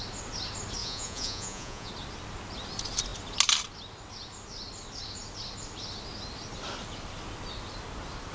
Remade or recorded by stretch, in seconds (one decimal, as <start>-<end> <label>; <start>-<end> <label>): 0.0-0.8 recorded; 0.8-1.9 remade; 1.9-8.3 recorded